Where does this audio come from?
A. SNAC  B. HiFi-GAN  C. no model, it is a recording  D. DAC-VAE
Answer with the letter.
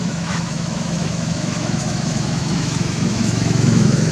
D